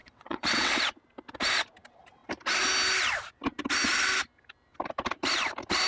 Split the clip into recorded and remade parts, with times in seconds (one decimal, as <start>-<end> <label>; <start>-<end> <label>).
0.0-0.7 remade; 0.7-5.9 recorded